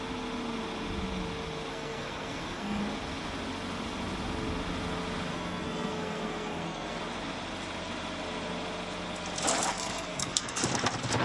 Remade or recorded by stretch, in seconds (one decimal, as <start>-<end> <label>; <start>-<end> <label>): 0.0-1.7 recorded; 1.7-2.8 remade; 2.8-5.3 recorded; 5.3-7.0 remade; 7.0-9.7 recorded; 9.7-10.6 remade; 10.6-11.2 recorded